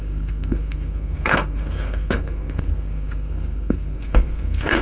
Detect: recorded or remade remade